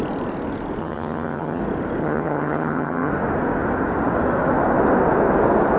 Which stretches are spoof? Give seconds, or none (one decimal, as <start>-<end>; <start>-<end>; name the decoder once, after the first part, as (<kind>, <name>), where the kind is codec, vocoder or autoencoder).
0.8-1.6 (vocoder, HiFi-GAN); 2.0-3.1